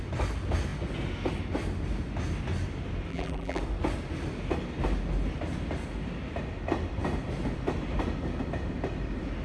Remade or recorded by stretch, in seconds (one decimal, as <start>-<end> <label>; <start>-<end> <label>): 0.0-3.1 recorded; 3.1-3.6 remade; 3.6-9.4 recorded